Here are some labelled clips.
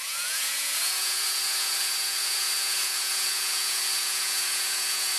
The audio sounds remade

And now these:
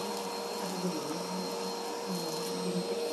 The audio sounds recorded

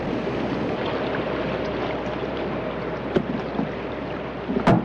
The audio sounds recorded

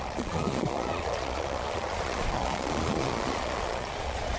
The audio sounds remade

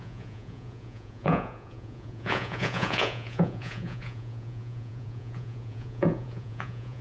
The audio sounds remade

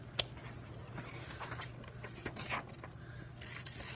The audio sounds recorded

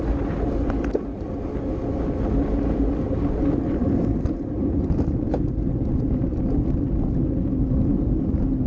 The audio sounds recorded